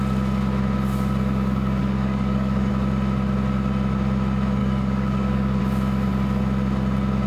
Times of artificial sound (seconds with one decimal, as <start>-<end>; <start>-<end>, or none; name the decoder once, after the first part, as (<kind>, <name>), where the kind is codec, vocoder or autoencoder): 1.8-2.7 (codec, DAC); 4.6-5.6